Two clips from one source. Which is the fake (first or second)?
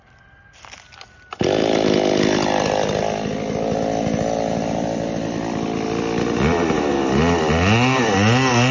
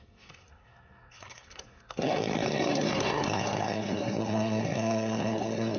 second